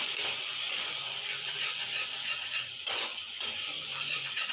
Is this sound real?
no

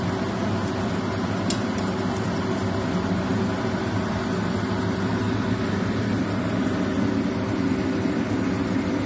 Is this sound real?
yes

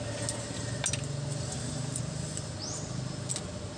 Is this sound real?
yes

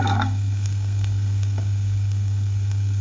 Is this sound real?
no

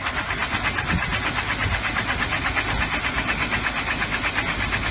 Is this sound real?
yes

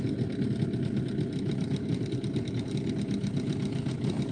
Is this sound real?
yes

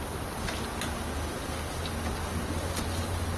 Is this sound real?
yes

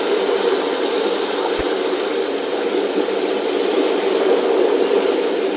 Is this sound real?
yes